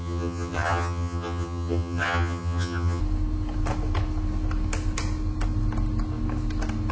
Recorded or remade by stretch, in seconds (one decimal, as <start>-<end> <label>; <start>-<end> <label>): 0.0-3.0 remade; 3.0-6.9 recorded